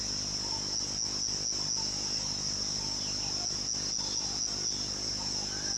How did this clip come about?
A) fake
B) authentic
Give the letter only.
B